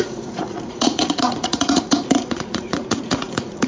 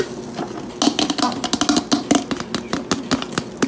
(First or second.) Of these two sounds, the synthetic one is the first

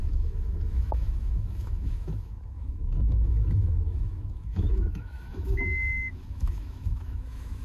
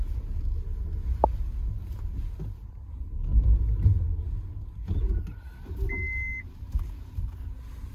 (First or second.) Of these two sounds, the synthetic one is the first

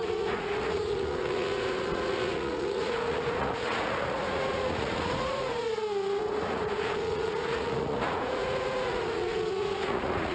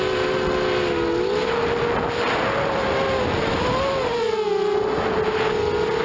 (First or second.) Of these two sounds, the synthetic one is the first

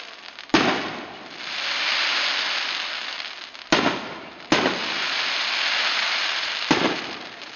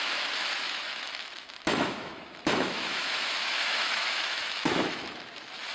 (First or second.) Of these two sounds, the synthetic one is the second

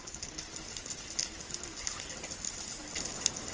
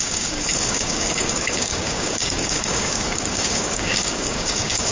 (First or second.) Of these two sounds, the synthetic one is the second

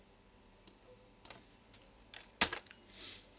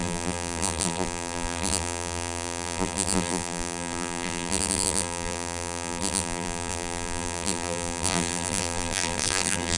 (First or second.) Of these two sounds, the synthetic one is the second